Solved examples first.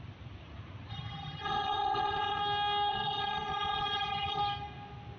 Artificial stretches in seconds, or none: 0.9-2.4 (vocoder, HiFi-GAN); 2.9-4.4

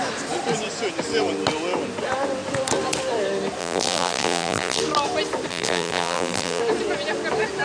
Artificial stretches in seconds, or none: 3.6-4.8 (vocoder, BigVGAN v2); 5.5-6.6

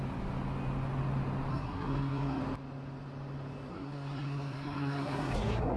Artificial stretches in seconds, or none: 1.5-2.4 (codec, SNAC); 3.7-5.8